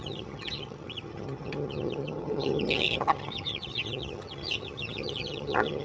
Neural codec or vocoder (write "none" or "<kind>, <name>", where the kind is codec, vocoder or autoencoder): vocoder, HiFi-GAN